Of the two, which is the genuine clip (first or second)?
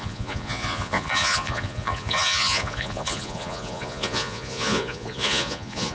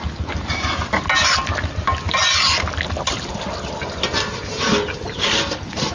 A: second